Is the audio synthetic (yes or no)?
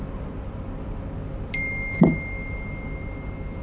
no